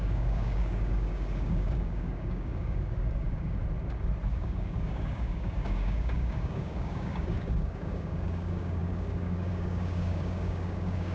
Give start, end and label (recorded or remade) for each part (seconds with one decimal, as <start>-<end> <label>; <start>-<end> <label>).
0.0-3.6 remade; 3.6-4.3 recorded; 4.3-11.1 remade